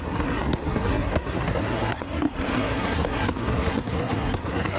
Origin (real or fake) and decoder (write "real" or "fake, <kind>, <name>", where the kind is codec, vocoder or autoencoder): fake, codec, SNAC